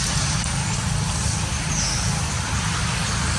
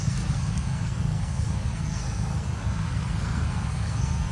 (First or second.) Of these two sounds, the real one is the first